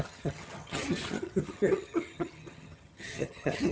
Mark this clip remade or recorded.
remade